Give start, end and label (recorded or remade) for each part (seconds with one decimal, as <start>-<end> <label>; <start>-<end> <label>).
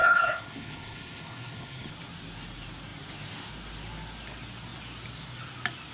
0.0-1.9 remade; 1.9-5.9 recorded